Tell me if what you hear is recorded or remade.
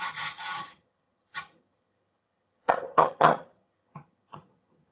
remade